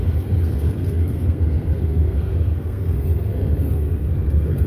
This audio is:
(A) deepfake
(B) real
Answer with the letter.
A